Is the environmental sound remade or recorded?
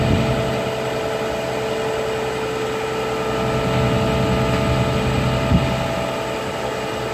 recorded